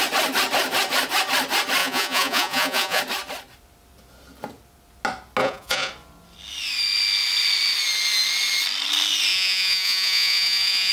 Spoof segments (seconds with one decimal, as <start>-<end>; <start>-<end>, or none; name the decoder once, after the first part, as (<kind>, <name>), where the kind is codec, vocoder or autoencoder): 1.8-3.0 (vocoder, Vocos); 5.4-5.9; 9.3-10.9